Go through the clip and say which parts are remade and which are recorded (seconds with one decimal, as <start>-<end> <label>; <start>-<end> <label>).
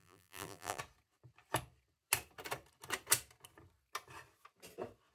0.0-0.8 remade; 0.8-5.1 recorded